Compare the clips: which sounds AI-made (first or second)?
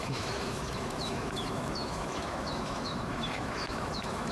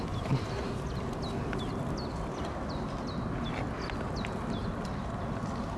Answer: first